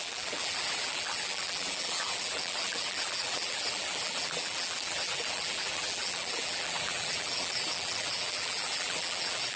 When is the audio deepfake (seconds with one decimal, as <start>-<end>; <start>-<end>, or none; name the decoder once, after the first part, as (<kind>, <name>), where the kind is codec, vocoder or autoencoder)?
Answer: 0.0-9.6 (vocoder, BigVGAN v2)